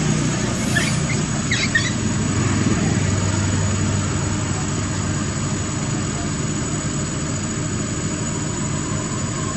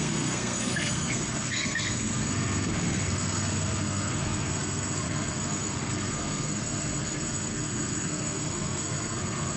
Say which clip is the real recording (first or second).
first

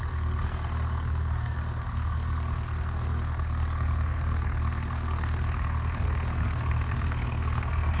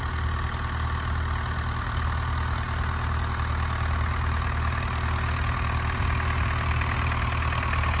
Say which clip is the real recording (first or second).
second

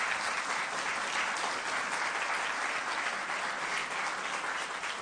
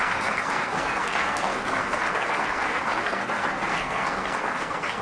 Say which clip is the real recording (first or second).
first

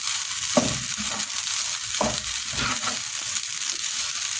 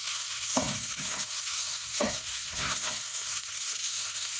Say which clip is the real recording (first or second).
first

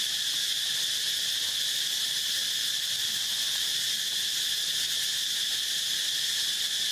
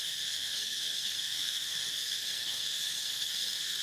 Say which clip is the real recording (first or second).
first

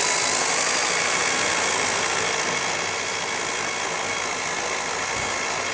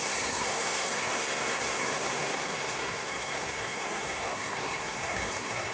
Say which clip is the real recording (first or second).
first